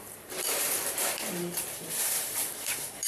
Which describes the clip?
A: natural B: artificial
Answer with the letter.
B